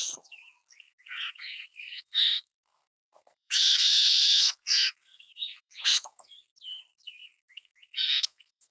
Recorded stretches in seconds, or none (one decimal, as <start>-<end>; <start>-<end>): none